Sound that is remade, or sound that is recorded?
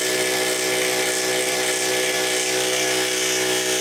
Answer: recorded